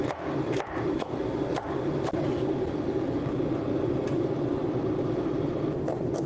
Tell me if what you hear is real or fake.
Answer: real